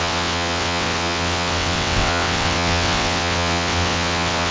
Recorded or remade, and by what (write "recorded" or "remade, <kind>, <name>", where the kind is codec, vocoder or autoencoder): remade, vocoder, WaveNeXt